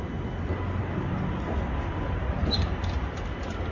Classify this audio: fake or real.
real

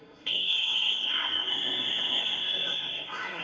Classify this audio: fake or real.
fake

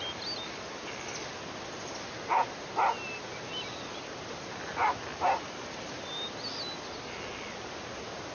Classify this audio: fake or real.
real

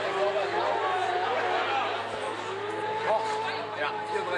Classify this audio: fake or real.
real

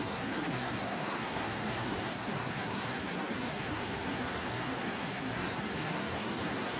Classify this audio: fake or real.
fake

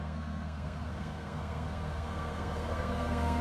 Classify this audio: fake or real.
fake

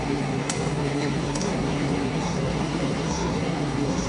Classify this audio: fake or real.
fake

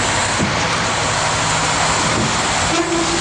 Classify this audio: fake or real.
real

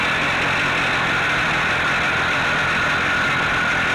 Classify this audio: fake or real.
real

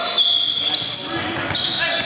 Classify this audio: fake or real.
real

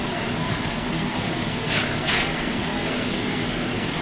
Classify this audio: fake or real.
fake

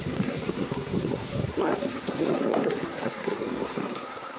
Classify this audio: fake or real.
fake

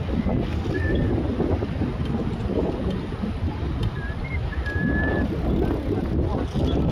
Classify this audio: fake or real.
real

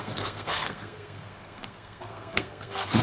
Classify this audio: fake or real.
fake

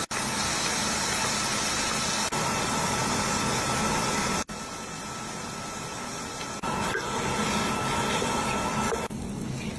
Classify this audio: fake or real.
real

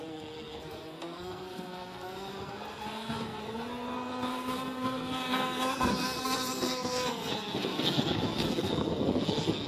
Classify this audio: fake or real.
fake